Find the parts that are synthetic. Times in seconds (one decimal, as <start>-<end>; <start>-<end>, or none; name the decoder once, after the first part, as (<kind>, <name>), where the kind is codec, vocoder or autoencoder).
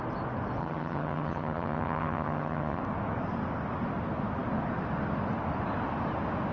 0.6-2.8 (vocoder, HiFi-GAN)